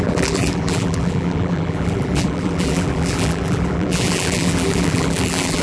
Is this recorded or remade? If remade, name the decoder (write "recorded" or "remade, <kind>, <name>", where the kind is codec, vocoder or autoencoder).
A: remade, vocoder, BigVGAN v2